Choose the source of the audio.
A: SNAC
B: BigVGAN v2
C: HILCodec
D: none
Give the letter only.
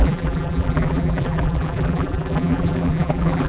B